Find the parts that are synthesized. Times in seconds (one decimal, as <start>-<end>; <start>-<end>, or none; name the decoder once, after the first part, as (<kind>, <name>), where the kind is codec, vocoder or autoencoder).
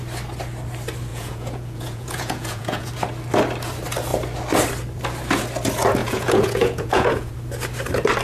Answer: 1.1-2.9 (vocoder, Vocos); 6.0-7.3